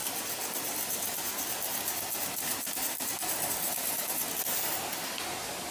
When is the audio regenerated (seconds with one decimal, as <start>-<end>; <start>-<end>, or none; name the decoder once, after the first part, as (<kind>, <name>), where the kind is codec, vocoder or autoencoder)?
none